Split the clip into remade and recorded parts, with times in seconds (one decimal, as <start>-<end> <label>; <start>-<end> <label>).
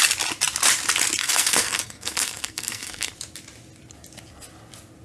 0.0-1.2 recorded; 1.2-3.1 remade; 3.1-5.0 recorded